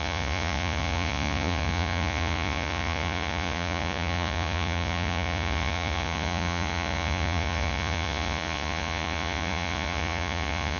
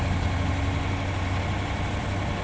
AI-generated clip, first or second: first